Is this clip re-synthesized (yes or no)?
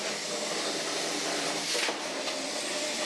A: yes